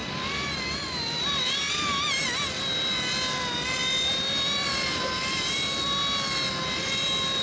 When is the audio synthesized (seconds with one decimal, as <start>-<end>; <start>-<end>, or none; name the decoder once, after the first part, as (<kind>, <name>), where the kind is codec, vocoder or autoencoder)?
0.0-1.6 (vocoder, BigVGAN v2)